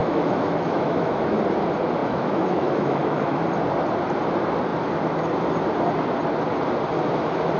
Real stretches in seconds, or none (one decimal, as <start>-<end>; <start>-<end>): 1.4-2.0; 3.4-7.6